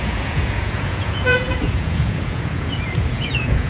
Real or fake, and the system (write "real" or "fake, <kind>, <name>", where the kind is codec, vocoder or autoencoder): fake, vocoder, Vocos